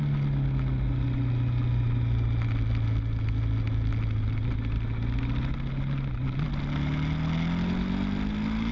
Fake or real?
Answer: real